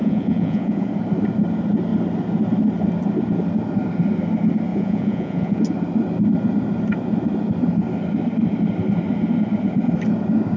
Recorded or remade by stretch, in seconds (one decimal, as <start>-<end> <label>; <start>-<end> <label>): 0.0-0.9 remade; 0.9-4.7 recorded; 4.7-5.6 remade; 5.6-10.6 recorded